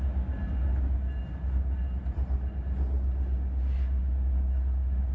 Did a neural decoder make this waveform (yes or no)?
no